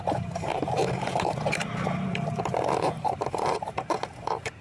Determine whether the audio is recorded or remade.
remade